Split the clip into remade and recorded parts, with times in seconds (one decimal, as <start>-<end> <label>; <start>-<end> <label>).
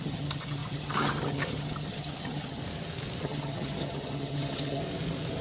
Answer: 0.0-2.6 remade; 2.6-3.2 recorded; 3.2-4.8 remade; 4.8-5.4 recorded